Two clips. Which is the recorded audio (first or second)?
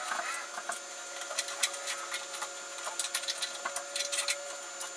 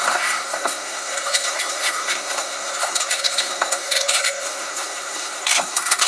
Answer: first